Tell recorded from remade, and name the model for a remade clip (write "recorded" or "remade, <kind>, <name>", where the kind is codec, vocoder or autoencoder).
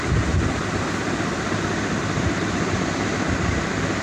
recorded